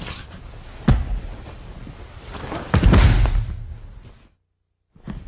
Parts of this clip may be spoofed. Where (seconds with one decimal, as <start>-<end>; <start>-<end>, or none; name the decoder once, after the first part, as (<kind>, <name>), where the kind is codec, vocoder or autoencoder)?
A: none